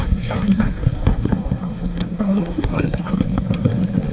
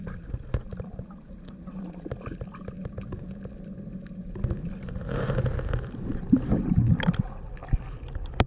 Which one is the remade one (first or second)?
first